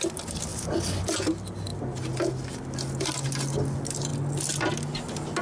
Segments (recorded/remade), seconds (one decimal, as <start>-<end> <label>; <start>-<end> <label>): 0.0-5.4 recorded